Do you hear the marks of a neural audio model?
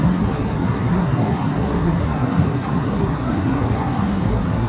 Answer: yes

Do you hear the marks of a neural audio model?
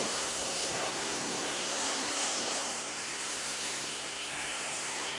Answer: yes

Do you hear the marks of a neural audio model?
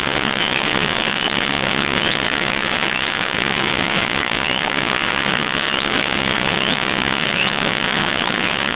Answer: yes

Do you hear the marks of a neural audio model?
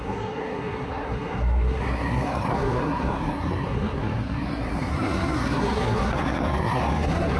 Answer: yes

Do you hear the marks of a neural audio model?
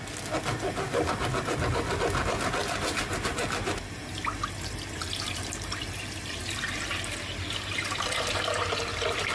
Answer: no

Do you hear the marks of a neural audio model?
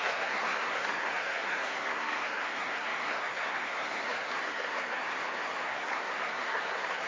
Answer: yes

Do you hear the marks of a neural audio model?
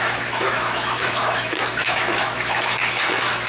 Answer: yes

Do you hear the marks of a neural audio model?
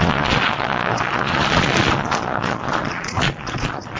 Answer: yes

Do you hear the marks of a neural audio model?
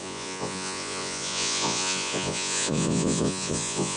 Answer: yes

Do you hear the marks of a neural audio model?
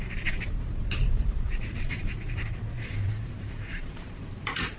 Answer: yes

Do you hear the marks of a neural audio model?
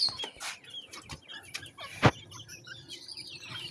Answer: no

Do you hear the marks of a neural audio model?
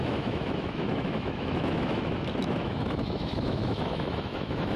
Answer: yes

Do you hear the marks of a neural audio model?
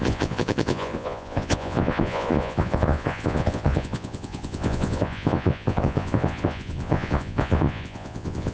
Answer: yes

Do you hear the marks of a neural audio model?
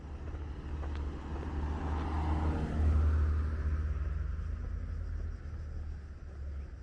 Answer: no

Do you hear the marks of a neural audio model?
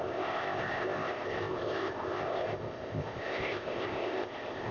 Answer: yes